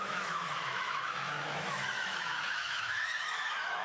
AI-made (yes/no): yes